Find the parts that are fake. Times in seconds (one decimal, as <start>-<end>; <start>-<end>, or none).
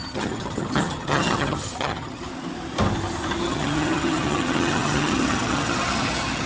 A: 0.0-2.3; 3.4-6.5